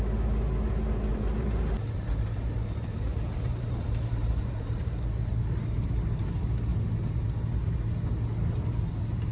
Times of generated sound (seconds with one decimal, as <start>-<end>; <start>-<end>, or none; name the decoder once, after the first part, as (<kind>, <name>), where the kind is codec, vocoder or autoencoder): 1.1-5.3 (vocoder, BigVGAN v2)